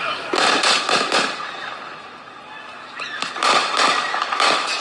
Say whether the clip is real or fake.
real